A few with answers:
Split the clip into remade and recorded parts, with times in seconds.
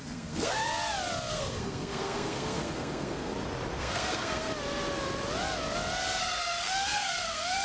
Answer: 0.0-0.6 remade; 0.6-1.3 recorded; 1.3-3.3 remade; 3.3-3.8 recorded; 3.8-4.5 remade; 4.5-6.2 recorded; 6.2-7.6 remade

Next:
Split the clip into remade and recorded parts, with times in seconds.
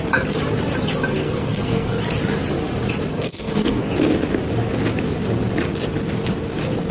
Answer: 0.0-1.1 recorded; 1.1-2.0 remade; 2.0-3.1 recorded; 3.1-3.9 remade; 3.9-6.9 recorded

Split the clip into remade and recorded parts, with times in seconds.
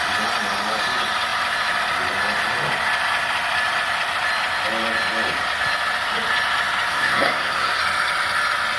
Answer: 0.0-6.9 recorded; 6.9-7.8 remade; 7.8-8.8 recorded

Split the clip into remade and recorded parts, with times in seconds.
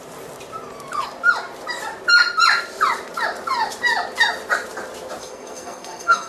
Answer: 0.0-5.2 recorded; 5.2-6.3 remade